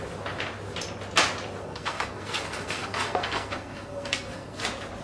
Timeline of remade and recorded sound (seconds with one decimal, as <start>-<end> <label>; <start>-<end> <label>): 0.0-1.6 recorded; 1.6-4.6 remade; 4.6-5.0 recorded